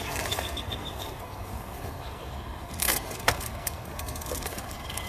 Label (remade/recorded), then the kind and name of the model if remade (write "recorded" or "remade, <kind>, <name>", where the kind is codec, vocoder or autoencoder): remade, codec, SNAC